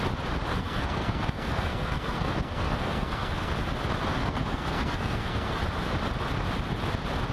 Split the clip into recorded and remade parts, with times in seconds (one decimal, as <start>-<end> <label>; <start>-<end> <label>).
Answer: 0.0-0.5 recorded; 0.5-3.5 remade; 3.5-4.1 recorded; 4.1-5.6 remade; 5.6-7.3 recorded

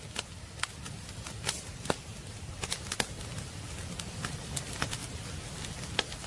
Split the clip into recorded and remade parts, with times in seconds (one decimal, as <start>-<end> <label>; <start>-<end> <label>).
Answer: 0.0-6.3 recorded

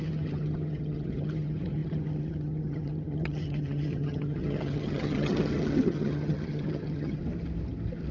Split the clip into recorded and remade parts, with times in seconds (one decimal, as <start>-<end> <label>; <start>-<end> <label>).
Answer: 0.0-7.2 remade; 7.2-8.1 recorded